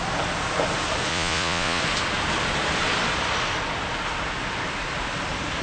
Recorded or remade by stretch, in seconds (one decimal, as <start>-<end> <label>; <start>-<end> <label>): 0.0-1.1 recorded; 1.1-1.8 remade; 1.8-5.6 recorded